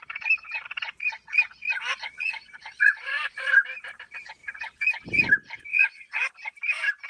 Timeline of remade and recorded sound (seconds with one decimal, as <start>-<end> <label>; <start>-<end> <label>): 0.0-1.9 recorded; 1.9-3.5 remade; 3.5-5.7 recorded; 5.7-6.3 remade; 6.3-7.1 recorded